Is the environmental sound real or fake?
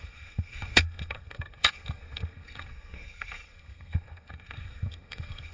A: fake